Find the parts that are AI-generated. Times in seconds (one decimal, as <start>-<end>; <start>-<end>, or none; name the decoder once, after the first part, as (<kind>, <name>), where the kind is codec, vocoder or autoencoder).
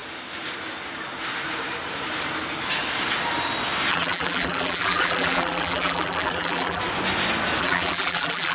3.9-6.8 (vocoder, BigVGAN v2); 7.6-8.5